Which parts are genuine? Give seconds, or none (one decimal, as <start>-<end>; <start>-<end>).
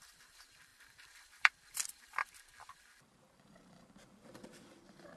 2.2-2.7